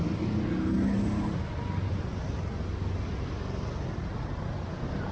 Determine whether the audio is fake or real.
real